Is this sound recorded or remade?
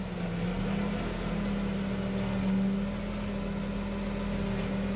recorded